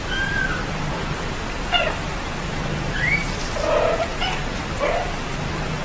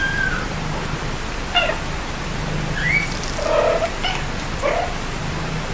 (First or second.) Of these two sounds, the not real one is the first